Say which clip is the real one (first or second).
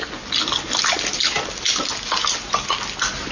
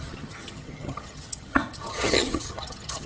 first